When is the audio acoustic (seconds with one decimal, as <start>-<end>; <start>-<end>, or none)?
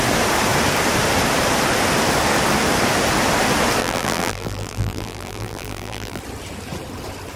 0.0-3.8; 6.2-7.4